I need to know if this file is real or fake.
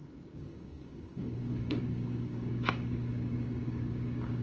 fake